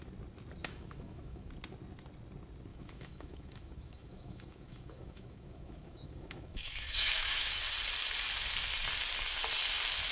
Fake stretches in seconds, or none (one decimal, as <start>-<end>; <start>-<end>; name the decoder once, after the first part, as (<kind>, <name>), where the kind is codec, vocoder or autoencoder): 0.6-1.5 (autoencoder, DAC-VAE); 2.7-7.5